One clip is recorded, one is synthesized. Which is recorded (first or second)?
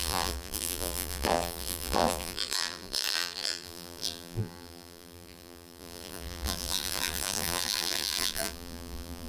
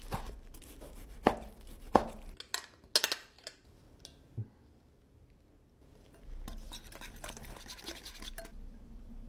second